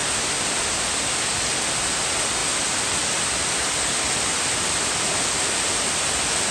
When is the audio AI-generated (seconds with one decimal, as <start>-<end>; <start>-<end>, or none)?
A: none